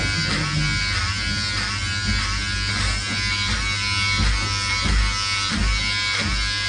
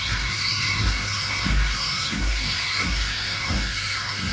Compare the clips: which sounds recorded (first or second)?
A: first